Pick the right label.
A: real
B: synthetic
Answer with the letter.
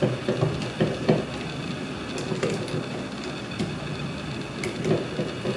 A